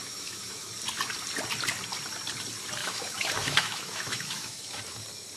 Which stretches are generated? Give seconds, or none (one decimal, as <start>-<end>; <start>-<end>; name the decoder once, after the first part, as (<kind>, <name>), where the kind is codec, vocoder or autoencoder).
0.0-0.7 (autoencoder, DAC-VAE); 2.8-4.8